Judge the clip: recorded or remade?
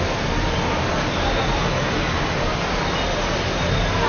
recorded